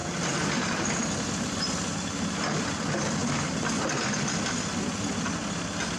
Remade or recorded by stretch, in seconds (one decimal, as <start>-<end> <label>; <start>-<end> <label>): 0.0-6.0 recorded